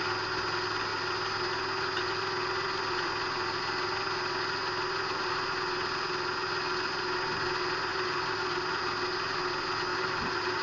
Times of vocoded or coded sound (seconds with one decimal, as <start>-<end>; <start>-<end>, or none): 7.9-8.8; 9.9-10.6